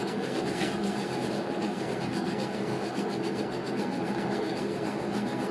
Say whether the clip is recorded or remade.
remade